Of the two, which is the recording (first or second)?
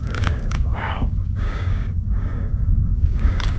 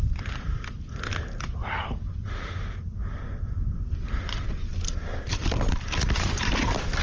second